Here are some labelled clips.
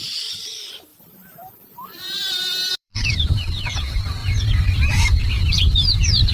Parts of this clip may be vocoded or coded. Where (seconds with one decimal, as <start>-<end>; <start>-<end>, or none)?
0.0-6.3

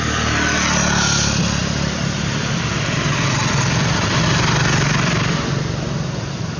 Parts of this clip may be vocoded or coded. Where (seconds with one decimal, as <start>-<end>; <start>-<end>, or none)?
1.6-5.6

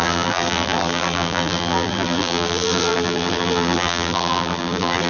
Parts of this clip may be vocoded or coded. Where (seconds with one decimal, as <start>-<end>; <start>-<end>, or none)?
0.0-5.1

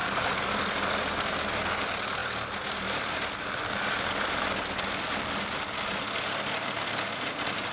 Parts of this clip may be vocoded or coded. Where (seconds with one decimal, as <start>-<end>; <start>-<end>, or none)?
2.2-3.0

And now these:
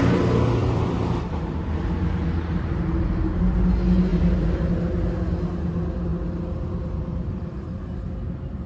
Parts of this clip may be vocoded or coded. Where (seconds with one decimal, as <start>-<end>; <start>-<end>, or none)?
0.6-2.0; 4.1-4.7; 6.1-7.8